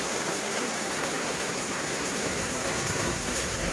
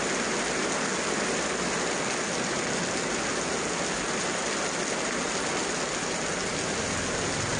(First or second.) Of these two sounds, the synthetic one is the first